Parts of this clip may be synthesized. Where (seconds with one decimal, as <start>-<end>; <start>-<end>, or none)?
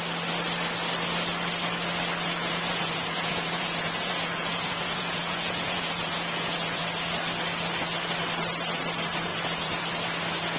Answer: 2.4-6.8; 9.3-9.8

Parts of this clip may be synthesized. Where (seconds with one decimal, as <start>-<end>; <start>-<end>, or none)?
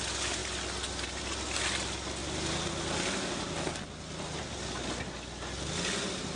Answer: none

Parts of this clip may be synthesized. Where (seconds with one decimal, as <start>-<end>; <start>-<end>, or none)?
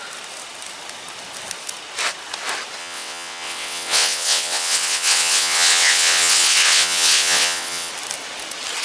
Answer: 2.8-7.9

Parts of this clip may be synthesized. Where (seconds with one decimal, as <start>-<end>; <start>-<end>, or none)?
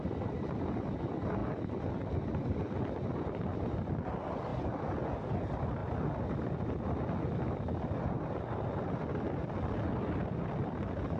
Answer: none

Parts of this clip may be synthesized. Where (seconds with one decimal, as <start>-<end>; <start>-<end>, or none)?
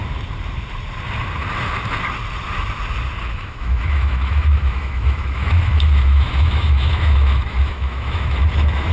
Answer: 3.2-8.9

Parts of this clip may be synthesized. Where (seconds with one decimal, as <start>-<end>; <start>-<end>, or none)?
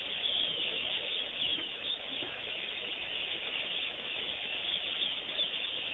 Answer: 0.0-5.9